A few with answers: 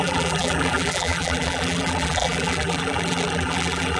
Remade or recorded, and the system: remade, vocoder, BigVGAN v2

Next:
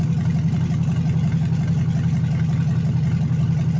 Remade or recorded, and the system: recorded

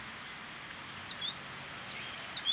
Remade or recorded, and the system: recorded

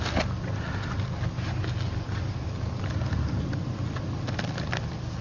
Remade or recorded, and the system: recorded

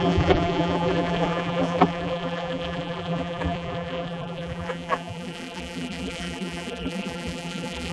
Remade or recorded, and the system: remade, vocoder, BigVGAN v2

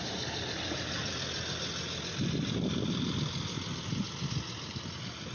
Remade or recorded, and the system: recorded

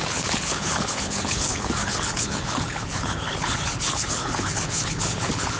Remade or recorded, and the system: remade, codec, HILCodec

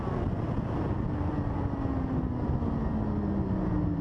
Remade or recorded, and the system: recorded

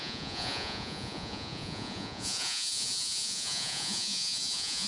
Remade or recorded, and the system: remade, vocoder, Vocos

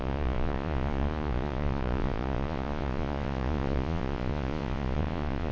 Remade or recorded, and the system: remade, vocoder, Vocos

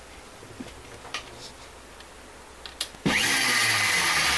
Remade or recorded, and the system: recorded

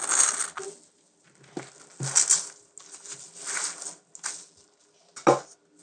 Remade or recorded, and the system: recorded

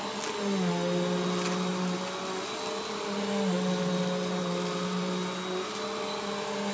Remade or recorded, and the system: recorded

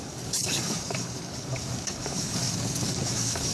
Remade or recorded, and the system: remade, codec, DAC